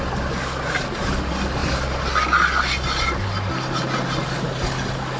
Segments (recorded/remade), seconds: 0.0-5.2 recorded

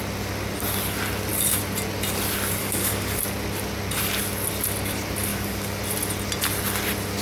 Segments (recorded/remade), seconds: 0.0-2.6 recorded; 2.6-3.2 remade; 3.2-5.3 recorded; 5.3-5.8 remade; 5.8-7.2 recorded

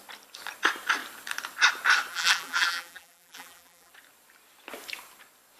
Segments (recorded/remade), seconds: 0.0-2.1 recorded; 2.1-3.9 remade; 3.9-5.6 recorded